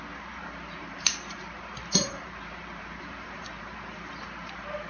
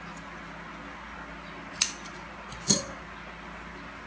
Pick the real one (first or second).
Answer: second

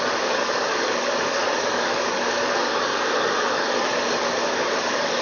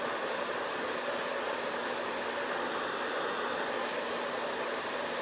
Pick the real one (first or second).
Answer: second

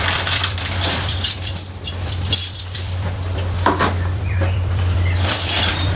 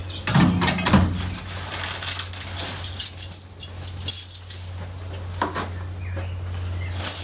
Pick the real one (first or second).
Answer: second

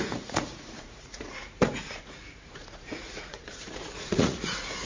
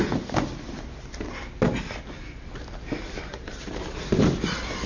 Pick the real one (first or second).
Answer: second